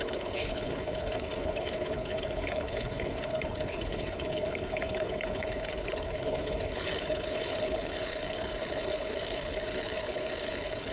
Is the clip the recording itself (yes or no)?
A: no